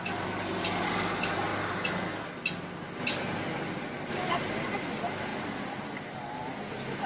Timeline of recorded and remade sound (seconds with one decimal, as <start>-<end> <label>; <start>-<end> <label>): 0.0-7.1 recorded